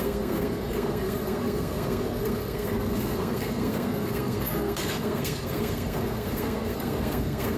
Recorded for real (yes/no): no